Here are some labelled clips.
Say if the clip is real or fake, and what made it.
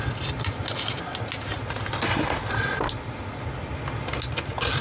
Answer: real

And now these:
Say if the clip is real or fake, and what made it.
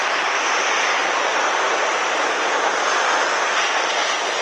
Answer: real